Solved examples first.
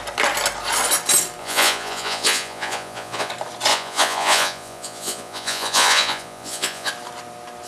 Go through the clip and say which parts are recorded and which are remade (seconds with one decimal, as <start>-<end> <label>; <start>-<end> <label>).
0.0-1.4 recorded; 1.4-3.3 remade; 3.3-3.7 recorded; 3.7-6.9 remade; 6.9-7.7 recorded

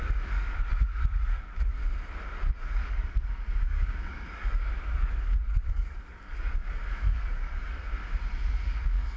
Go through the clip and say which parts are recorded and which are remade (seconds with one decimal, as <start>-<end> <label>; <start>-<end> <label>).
0.0-1.8 remade; 1.8-2.5 recorded; 2.5-7.9 remade; 7.9-8.5 recorded; 8.5-9.2 remade

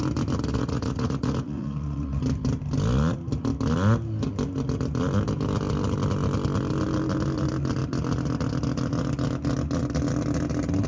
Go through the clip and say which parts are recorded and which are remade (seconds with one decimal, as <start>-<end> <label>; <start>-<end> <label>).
0.0-0.5 recorded; 0.5-2.2 remade; 2.2-10.9 recorded

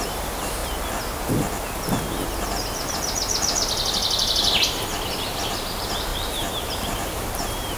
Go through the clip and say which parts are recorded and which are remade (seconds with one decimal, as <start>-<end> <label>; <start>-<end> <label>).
0.0-0.6 remade; 0.6-5.1 recorded; 5.1-7.8 remade